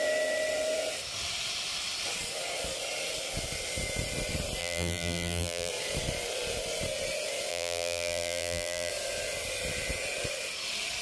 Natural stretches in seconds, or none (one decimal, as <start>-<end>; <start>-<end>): 0.0-4.6; 5.7-7.5; 8.9-11.0